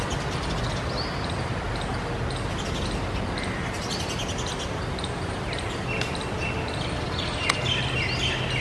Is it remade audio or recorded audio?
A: recorded